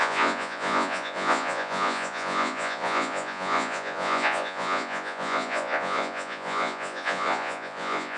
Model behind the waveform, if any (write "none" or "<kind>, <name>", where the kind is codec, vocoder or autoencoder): vocoder, Vocos